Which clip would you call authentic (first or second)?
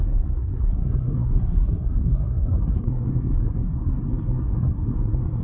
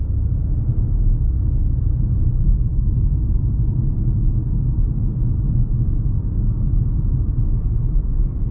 second